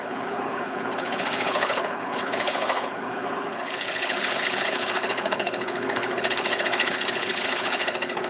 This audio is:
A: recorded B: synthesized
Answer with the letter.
B